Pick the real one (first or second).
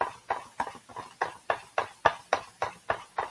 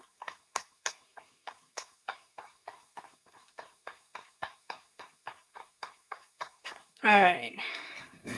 first